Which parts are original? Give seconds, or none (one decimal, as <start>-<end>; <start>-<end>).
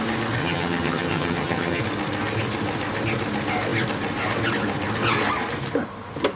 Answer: 0.0-0.4; 1.8-6.4